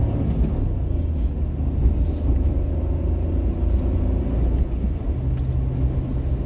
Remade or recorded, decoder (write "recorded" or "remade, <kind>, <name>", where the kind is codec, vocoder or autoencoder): recorded